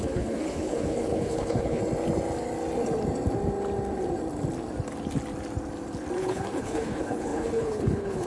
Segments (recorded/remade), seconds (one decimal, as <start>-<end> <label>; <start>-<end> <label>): 0.0-1.8 remade; 1.8-6.2 recorded; 6.2-8.3 remade